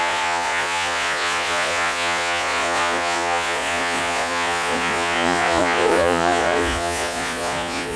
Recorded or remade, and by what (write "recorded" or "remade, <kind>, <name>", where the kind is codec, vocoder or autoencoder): remade, vocoder, Vocos